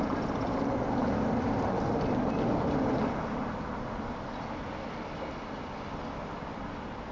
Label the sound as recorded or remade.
recorded